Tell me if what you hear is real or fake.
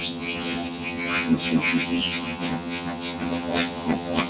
fake